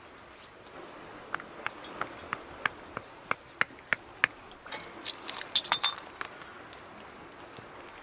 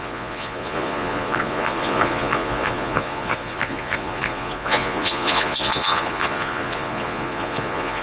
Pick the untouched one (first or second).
first